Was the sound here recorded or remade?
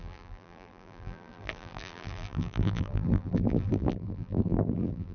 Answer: remade